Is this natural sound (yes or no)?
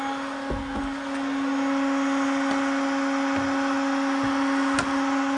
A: yes